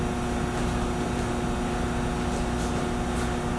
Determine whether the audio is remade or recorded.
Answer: recorded